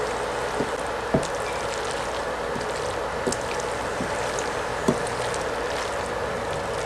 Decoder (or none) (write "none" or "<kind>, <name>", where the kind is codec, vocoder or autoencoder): none